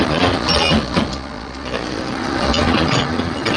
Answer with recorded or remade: remade